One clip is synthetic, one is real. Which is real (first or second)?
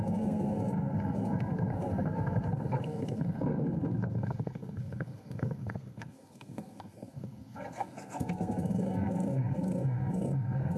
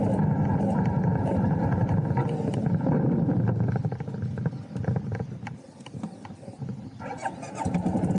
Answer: second